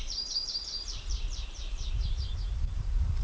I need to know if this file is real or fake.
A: fake